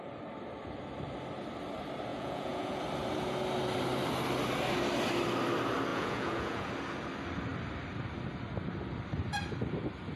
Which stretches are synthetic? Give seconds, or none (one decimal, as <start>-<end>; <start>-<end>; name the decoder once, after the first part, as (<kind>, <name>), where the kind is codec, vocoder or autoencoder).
2.1-2.8 (vocoder, Vocos); 5.9-6.7